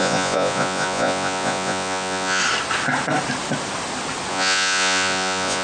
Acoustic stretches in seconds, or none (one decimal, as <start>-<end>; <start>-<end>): 2.4-4.3